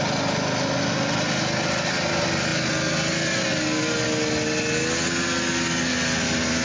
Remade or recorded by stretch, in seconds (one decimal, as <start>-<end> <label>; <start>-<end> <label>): 0.0-6.6 recorded